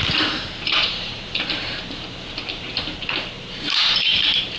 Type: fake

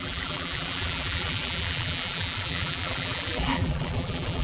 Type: fake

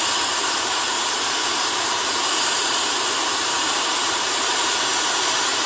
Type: fake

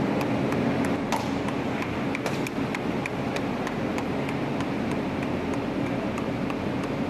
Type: real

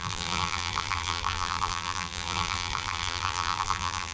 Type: fake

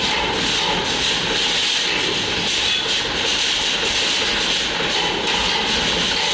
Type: real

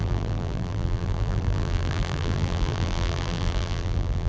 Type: fake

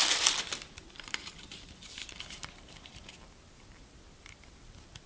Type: fake